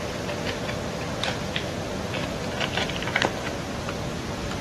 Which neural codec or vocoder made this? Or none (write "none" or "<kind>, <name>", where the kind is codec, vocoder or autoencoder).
none